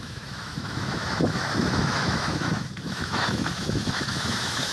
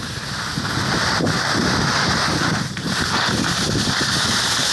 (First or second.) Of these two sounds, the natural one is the second